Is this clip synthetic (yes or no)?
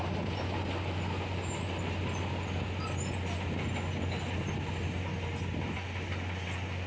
no